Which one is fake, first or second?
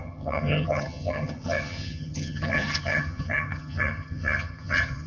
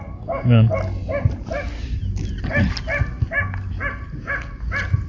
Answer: first